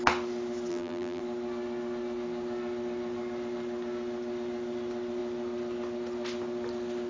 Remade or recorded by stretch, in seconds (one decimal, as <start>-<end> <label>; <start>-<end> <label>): 0.0-0.7 recorded; 0.7-1.2 remade; 1.2-7.1 recorded